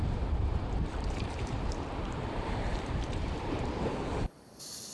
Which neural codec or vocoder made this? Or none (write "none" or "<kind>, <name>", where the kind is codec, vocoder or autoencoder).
vocoder, BigVGAN v2